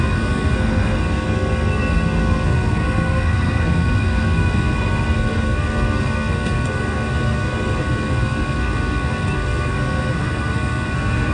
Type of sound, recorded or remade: remade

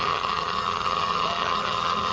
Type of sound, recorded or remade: remade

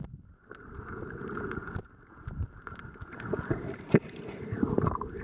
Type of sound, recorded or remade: recorded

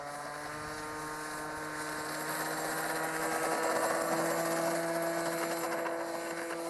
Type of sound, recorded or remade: recorded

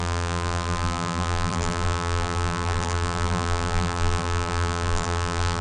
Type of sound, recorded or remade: remade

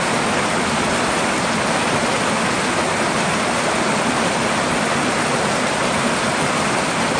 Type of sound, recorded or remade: recorded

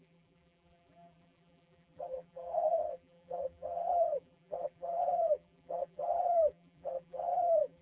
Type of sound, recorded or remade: remade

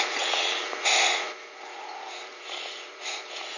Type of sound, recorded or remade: remade